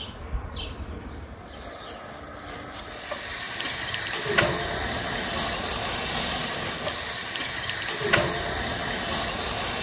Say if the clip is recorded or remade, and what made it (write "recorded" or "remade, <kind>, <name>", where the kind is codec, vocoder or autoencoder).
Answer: recorded